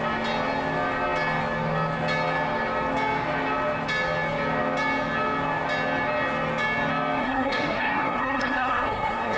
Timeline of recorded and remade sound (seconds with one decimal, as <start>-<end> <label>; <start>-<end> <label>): 0.0-7.2 recorded; 7.2-9.4 remade

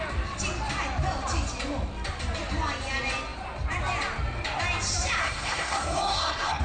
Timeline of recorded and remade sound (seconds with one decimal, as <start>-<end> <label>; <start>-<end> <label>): 0.0-5.2 recorded; 5.2-6.6 remade

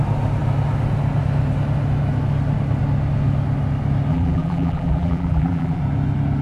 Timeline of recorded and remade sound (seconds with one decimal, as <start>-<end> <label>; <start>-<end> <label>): 0.0-4.1 recorded; 4.1-5.8 remade; 5.8-6.4 recorded

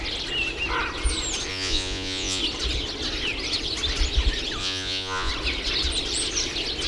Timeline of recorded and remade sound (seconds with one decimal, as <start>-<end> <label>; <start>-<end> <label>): 0.0-1.5 recorded; 1.5-2.4 remade; 2.4-4.6 recorded; 4.6-5.3 remade; 5.3-6.9 recorded

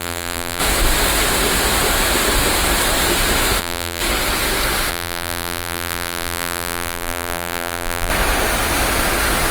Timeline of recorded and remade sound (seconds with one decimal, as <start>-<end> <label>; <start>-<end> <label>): 0.0-0.6 remade; 0.6-3.6 recorded; 3.6-4.0 remade; 4.0-4.9 recorded; 4.9-8.1 remade; 8.1-9.5 recorded